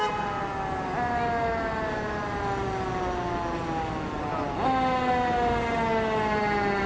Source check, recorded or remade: recorded